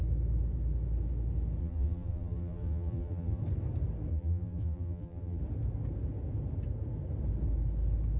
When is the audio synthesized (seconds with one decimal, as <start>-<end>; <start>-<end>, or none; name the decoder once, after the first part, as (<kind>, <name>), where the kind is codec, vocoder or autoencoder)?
1.6-3.4 (vocoder, BigVGAN v2); 4.1-5.4